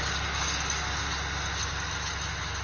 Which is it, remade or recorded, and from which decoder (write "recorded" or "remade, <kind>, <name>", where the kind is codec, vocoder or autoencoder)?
recorded